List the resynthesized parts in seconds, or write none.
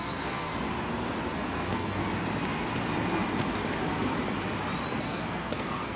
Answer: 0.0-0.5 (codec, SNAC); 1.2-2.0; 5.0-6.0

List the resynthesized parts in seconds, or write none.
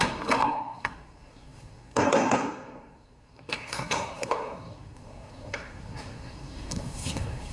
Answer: 0.0-7.5 (codec, SNAC)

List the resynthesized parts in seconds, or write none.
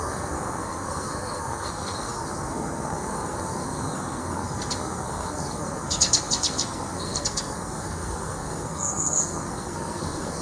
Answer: 0.0-10.4 (codec, SNAC)